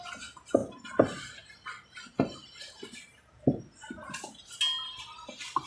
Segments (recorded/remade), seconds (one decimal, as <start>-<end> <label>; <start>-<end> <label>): 0.0-0.6 recorded; 0.6-3.6 remade; 3.6-5.7 recorded